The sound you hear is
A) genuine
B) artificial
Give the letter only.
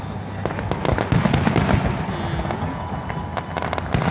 A